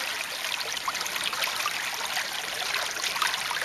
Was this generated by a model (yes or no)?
no